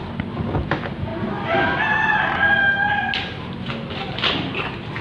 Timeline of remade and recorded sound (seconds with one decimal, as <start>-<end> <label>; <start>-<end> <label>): 0.0-5.0 recorded